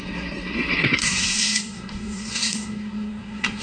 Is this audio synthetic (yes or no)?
yes